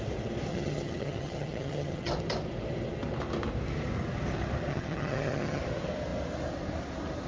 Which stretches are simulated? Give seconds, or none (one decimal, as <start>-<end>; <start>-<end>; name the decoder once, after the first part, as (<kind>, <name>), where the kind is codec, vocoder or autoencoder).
0.5-2.1 (vocoder, HiFi-GAN); 4.7-5.6